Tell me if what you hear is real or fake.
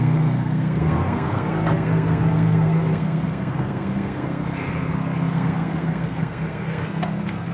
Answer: fake